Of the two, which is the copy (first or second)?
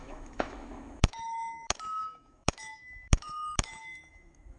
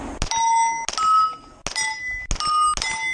first